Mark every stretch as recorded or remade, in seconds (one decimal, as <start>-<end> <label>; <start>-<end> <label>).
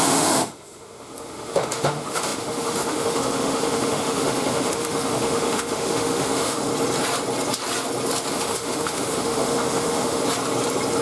0.0-6.7 remade; 6.7-8.3 recorded; 8.3-10.2 remade; 10.2-11.0 recorded